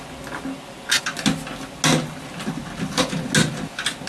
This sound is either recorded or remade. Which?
recorded